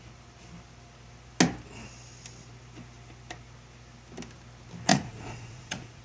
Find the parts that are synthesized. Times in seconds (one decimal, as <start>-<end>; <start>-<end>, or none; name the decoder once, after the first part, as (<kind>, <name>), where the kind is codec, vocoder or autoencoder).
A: 4.9-6.0 (vocoder, Vocos)